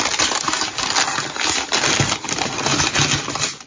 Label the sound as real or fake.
real